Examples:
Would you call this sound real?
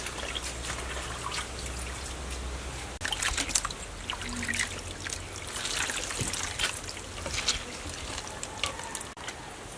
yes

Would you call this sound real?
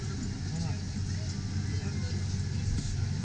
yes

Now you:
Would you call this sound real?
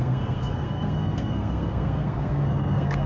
no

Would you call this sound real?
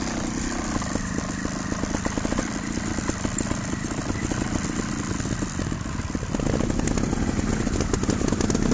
yes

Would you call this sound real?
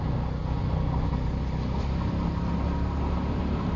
yes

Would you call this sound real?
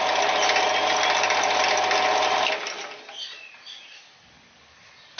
yes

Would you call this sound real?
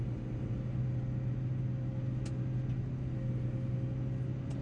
yes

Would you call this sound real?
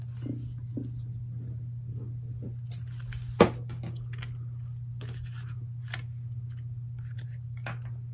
yes